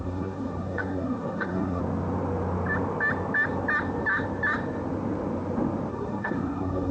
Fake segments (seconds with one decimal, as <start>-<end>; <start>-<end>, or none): 0.0-1.8; 5.9-6.9